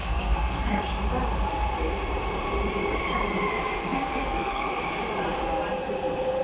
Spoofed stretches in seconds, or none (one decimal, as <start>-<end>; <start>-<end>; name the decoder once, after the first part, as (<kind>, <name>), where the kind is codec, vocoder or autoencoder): 0.0-0.8 (codec, SNAC); 3.8-4.8